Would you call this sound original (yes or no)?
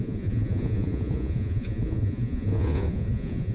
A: no